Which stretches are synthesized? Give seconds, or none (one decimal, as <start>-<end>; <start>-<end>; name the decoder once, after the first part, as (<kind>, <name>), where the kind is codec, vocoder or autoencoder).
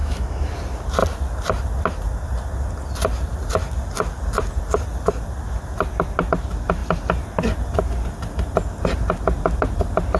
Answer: 0.0-0.5 (autoencoder, DAC-VAE)